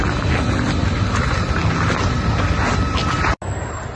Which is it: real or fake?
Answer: real